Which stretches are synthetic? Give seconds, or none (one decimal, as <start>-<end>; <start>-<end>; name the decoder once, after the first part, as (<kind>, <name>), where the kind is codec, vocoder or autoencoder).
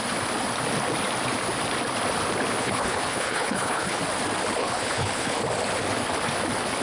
2.6-4.0 (codec, HILCodec); 4.6-5.4